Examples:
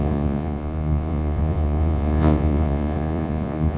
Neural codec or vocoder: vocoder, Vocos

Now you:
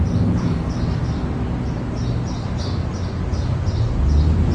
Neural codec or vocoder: none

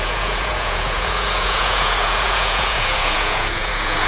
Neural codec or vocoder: vocoder, Vocos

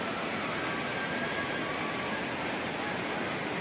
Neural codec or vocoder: none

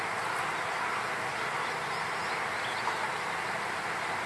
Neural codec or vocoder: none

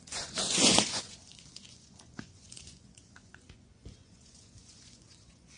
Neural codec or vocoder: vocoder, Vocos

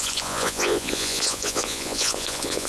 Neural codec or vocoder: vocoder, Vocos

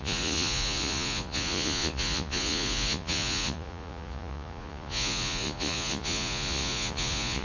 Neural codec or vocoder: vocoder, Vocos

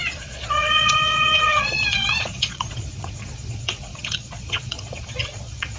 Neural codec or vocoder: vocoder, Vocos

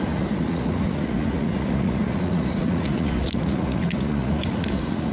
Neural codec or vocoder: vocoder, Vocos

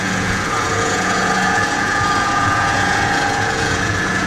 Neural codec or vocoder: vocoder, Vocos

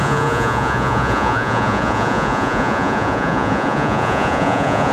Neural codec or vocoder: vocoder, Vocos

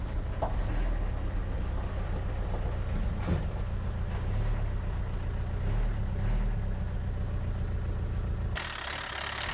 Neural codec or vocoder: none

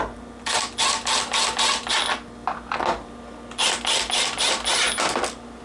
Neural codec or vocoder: none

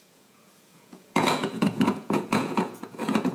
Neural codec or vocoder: vocoder, Vocos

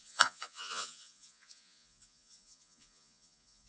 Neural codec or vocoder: vocoder, Vocos